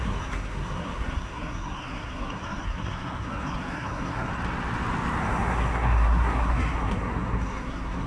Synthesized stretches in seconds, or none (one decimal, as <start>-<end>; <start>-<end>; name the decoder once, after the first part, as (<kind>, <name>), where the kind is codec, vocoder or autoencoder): 0.0-4.3 (codec, SNAC); 5.2-8.1